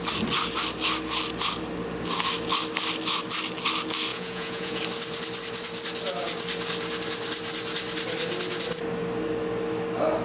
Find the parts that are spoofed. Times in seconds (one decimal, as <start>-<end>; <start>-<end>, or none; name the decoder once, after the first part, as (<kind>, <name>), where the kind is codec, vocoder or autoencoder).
4.1-4.8 (vocoder, Vocos)